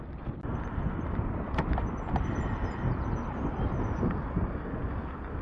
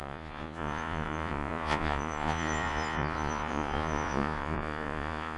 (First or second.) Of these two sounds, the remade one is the second